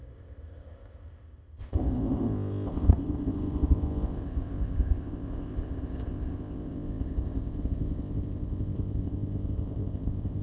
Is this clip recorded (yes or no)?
no